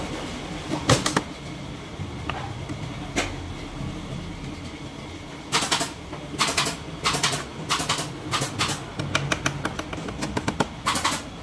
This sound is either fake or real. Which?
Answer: real